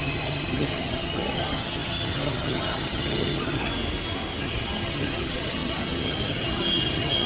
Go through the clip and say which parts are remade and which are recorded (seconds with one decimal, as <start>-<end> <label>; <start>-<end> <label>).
0.0-3.7 remade; 3.7-4.4 recorded; 4.4-7.3 remade